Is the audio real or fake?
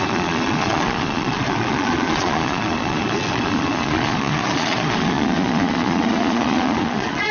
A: fake